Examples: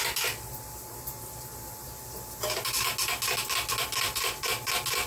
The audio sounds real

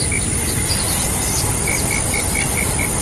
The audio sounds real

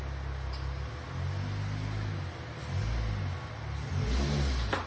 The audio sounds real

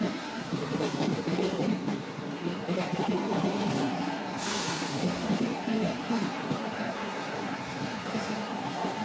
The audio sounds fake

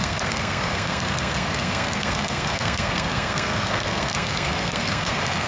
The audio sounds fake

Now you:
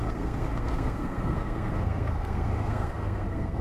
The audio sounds fake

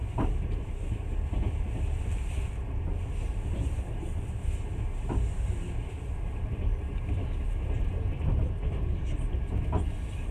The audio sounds real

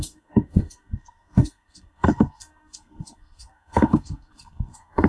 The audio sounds fake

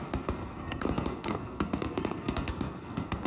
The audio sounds fake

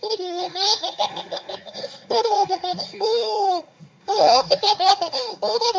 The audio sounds fake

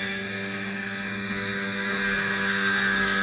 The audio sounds fake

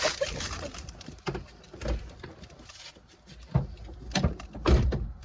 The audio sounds real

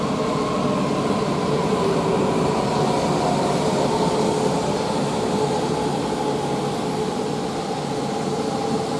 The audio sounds real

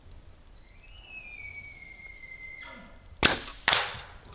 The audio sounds real